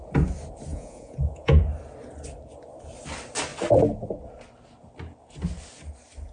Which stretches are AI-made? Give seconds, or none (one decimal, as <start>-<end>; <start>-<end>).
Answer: 0.7-1.6